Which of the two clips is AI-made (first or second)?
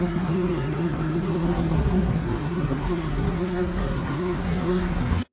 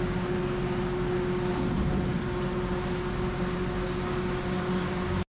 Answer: first